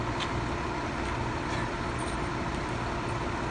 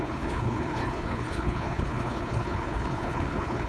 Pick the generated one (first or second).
second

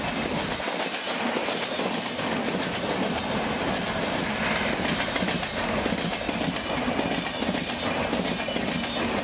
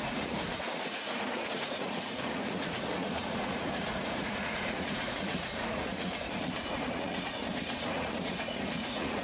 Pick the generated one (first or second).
second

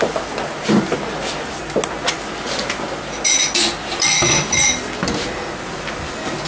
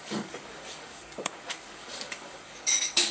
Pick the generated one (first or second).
second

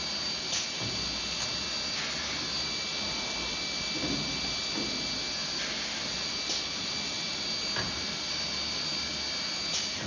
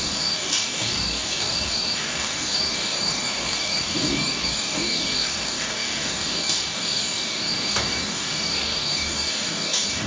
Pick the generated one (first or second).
second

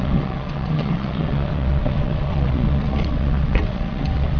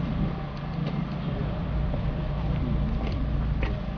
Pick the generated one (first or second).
first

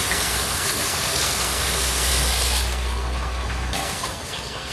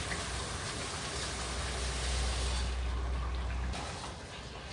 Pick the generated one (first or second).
first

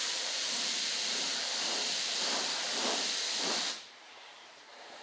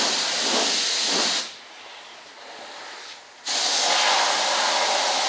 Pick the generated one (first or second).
first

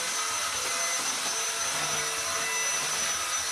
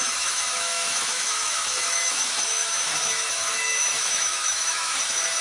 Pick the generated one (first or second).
second